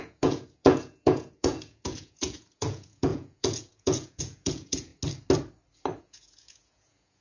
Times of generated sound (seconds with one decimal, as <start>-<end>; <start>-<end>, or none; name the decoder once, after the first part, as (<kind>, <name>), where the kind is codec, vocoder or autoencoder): 0.0-4.9 (vocoder, Vocos); 6.0-7.2